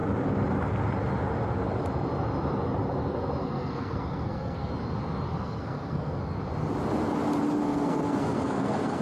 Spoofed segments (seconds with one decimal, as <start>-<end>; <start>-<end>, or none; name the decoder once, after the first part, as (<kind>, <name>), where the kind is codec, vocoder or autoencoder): 3.4-4.7 (codec, SNAC); 5.3-6.2; 7.6-9.0